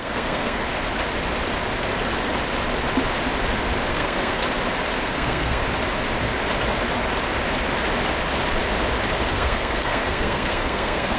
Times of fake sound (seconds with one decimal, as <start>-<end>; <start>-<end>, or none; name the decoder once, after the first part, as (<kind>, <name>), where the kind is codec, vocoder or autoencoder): 0.0-0.6 (codec, SNAC); 3.9-4.4; 5.0-5.6; 9.3-11.2

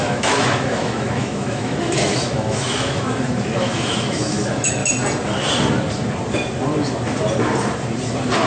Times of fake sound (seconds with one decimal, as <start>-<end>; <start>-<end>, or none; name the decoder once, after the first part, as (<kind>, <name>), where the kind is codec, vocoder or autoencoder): 0.0-4.8 (autoencoder, DAC-VAE)

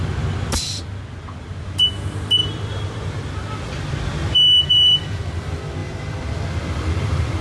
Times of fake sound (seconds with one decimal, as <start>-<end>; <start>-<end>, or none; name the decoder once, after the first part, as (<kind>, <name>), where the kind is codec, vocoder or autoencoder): 2.4-5.2 (vocoder, BigVGAN v2); 5.8-7.4

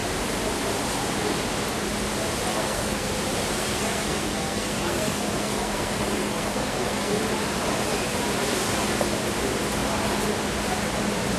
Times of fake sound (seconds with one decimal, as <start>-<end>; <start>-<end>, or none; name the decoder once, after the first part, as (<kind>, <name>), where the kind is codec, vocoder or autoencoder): 2.5-3.1 (codec, SNAC); 3.5-7.2

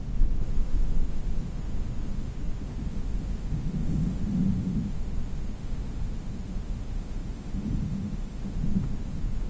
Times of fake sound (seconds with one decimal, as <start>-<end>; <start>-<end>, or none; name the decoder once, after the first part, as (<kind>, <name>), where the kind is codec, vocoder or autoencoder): 0.0-9.5 (autoencoder, DAC-VAE)

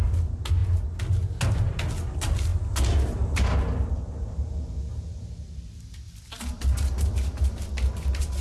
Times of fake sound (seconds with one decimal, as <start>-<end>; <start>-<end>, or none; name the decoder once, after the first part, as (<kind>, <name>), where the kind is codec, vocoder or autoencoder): none